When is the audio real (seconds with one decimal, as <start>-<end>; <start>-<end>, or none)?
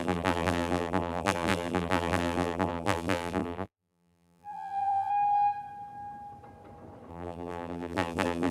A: 5.1-7.1